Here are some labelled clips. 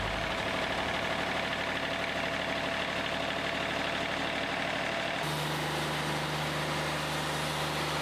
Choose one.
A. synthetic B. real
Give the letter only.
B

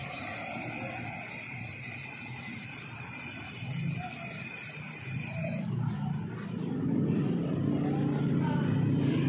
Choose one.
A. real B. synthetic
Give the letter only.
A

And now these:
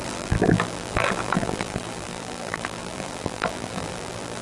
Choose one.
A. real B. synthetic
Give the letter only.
B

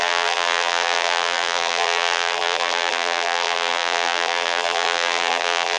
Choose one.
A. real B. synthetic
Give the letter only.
B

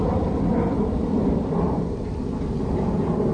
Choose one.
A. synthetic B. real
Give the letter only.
B